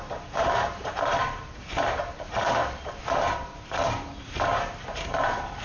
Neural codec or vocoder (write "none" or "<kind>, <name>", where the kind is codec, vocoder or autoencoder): vocoder, BigVGAN v2